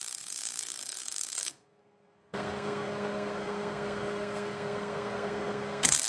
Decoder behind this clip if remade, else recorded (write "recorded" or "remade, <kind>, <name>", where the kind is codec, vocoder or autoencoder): remade, codec, SNAC